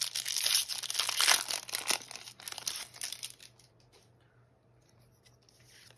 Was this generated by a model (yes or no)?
no